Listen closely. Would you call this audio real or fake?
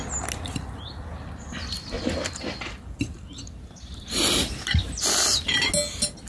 real